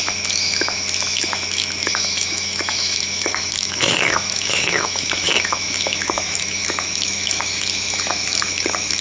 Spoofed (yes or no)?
yes